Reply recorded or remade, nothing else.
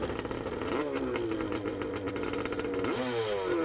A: recorded